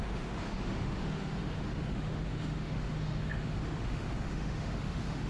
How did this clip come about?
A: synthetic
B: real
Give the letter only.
A